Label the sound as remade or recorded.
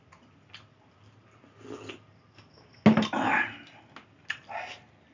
recorded